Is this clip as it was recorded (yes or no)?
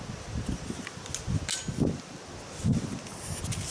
yes